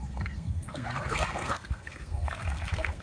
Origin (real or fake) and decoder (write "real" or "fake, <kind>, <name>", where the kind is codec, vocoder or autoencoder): fake, codec, SNAC